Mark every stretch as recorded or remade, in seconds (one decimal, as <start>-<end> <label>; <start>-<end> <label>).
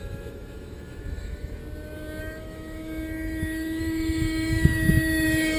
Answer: 0.0-1.6 remade; 1.6-2.2 recorded; 2.2-5.6 remade